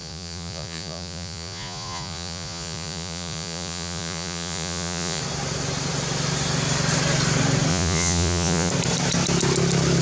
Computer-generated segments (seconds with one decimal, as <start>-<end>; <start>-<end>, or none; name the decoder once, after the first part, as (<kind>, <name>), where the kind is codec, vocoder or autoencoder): 0.0-5.2 (vocoder, Vocos); 7.7-8.7